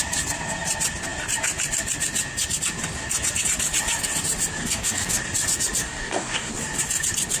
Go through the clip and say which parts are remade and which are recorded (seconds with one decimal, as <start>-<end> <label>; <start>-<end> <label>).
0.0-4.6 recorded; 4.6-5.2 remade; 5.2-5.8 recorded; 5.8-6.5 remade; 6.5-7.4 recorded